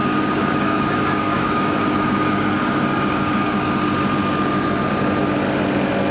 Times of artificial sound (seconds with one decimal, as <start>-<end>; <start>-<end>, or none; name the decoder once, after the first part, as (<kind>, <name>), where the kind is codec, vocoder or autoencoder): 0.0-3.7 (codec, DAC)